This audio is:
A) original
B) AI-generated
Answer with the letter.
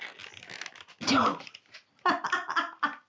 A